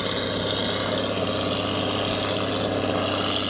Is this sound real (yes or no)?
yes